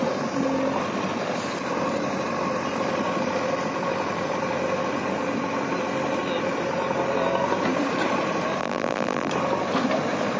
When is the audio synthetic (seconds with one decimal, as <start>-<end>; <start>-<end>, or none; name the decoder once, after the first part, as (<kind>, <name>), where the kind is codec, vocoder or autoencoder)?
8.6-9.3 (vocoder, BigVGAN v2)